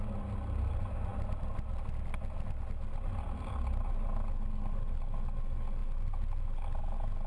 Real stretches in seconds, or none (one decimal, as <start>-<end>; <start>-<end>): 0.0-7.3